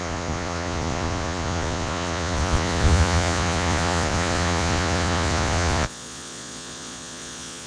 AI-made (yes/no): yes